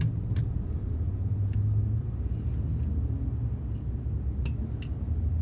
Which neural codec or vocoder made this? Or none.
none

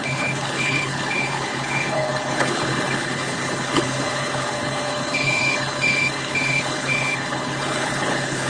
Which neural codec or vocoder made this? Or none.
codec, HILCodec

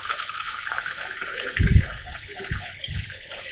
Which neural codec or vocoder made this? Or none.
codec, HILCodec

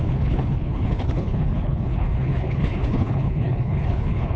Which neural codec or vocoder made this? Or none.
codec, HILCodec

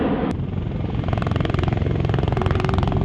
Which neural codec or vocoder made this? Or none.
none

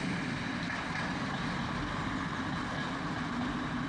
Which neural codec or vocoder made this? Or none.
none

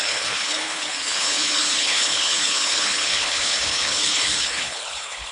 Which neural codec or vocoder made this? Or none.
codec, HILCodec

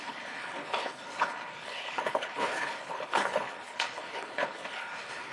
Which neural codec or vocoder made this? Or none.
codec, HILCodec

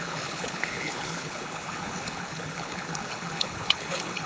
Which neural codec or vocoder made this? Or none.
codec, HILCodec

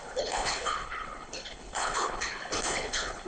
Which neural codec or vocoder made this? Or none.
codec, HILCodec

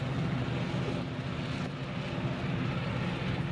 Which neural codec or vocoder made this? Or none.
none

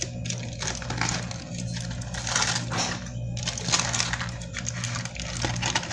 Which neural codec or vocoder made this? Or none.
none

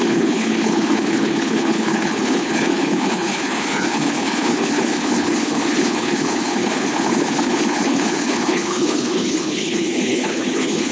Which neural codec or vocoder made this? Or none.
codec, HILCodec